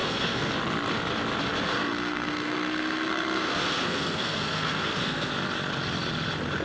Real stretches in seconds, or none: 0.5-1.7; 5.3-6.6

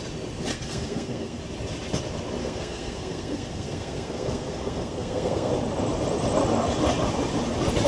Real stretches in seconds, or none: 0.0-0.5; 1.4-2.4; 5.5-7.9

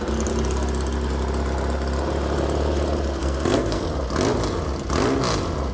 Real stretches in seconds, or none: 0.0-3.2; 3.8-5.7

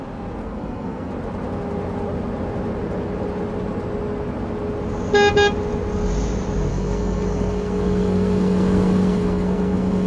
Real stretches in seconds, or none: 0.0-0.4; 1.1-6.7

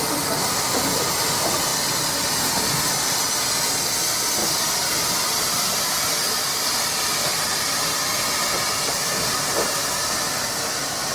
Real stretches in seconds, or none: 0.0-11.1

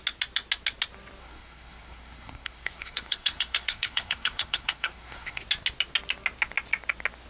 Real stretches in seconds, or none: 0.0-1.2; 5.4-7.3

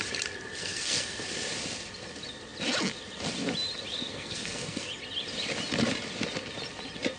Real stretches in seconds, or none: 0.0-0.6; 1.2-4.1; 4.9-7.2

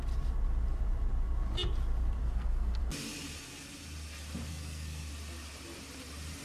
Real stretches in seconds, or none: 0.0-2.2; 2.8-4.5; 5.1-6.4